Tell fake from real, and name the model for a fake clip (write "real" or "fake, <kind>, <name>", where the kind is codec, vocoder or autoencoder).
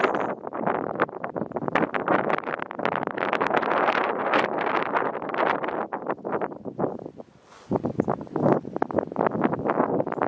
real